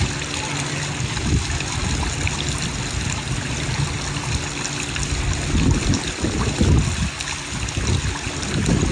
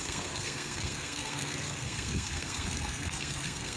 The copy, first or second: second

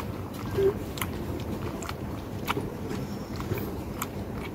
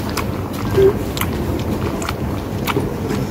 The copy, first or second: first